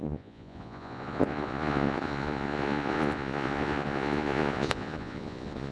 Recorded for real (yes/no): no